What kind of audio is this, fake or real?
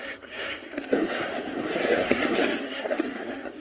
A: fake